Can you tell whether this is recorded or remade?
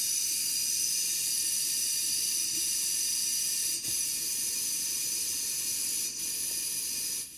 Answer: recorded